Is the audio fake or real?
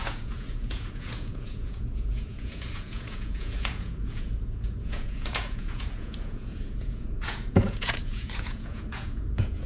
fake